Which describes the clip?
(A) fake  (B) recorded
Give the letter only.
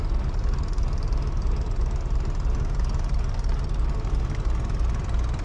B